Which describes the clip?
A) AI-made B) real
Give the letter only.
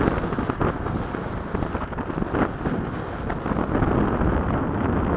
B